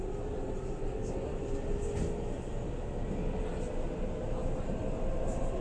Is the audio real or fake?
real